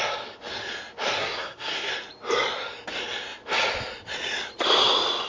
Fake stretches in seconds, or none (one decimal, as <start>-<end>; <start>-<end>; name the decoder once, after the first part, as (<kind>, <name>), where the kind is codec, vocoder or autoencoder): 1.2-1.9 (codec, SNAC)